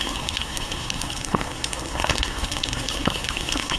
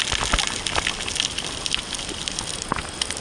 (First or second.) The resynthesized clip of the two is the first